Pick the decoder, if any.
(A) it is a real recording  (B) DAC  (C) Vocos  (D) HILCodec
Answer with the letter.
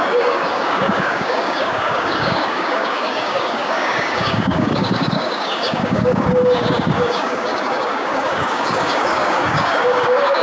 B